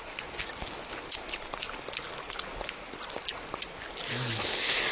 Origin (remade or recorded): recorded